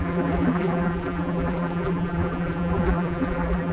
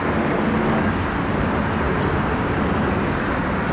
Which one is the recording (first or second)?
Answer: second